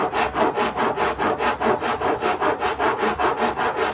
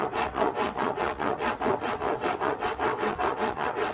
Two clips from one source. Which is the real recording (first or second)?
first